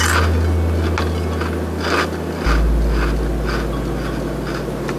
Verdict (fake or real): real